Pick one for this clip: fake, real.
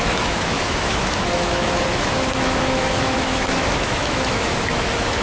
fake